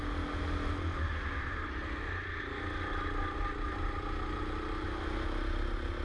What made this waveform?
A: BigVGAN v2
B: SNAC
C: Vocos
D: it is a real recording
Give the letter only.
D